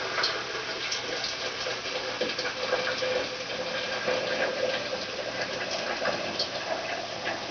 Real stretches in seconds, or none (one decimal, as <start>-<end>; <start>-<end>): 0.0-7.5